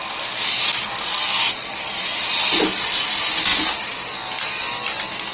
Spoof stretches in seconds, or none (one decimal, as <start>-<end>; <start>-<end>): none